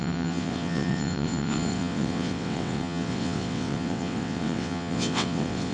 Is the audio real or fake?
fake